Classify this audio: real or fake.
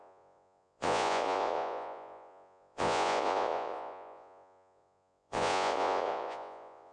fake